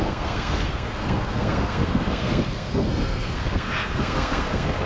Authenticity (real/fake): fake